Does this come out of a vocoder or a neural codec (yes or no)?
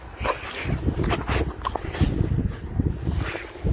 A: no